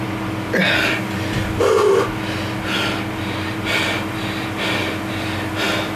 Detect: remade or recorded recorded